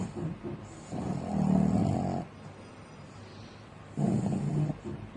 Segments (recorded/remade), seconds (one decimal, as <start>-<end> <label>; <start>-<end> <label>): 0.0-5.2 recorded